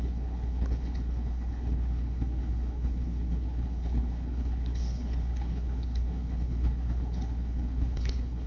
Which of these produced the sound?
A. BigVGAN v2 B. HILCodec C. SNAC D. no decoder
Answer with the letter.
B